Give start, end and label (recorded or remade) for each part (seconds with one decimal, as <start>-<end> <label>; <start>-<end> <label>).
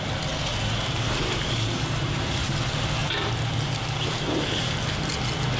0.0-0.5 recorded; 0.5-2.5 remade; 2.5-3.0 recorded; 3.0-4.8 remade; 4.8-5.6 recorded